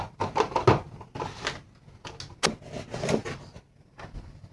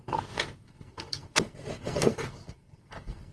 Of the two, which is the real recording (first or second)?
first